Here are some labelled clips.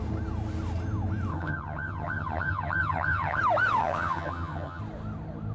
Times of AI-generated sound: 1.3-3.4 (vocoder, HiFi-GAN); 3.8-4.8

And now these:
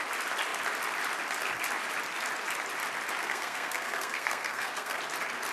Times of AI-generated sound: 3.2-5.0 (codec, SNAC)